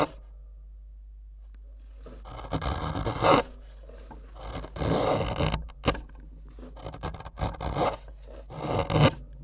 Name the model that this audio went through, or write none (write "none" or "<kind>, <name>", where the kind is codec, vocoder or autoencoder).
none